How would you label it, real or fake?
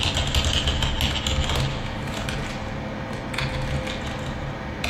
real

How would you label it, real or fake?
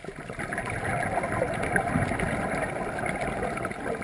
real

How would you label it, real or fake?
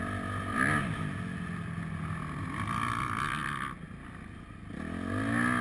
real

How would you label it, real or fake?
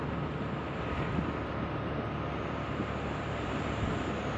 real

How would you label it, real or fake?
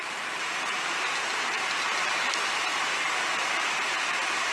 fake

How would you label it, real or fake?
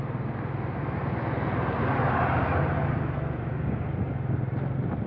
real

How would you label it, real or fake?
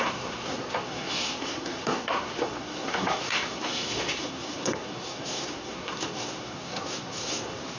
fake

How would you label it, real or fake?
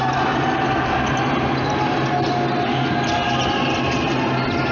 real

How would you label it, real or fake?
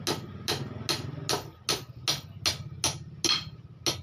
real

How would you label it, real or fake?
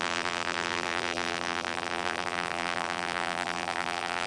fake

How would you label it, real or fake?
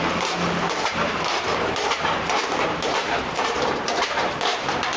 fake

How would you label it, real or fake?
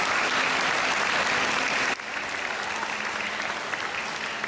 real